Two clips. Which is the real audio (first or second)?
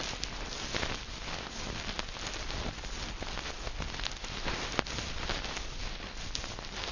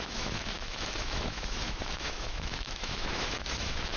first